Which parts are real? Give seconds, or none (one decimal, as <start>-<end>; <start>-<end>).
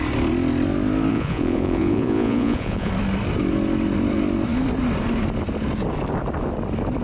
0.0-1.1; 2.9-7.0